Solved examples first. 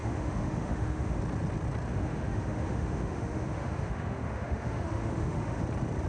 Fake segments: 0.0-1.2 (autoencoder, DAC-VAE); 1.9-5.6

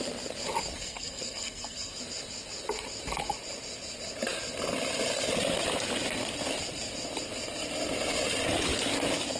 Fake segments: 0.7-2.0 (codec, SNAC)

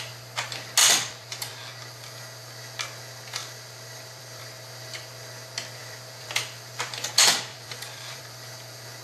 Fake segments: 0.8-1.6 (vocoder, BigVGAN v2); 3.4-4.4; 5.8-7.1; 7.5-8.2

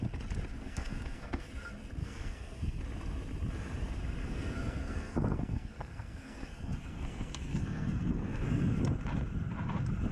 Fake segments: 0.5-1.5 (codec, SNAC); 2.0-2.8; 4.2-8.8